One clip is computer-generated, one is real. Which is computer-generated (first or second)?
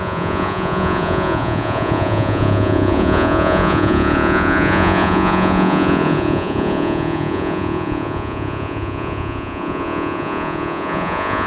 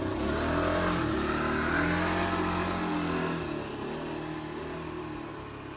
first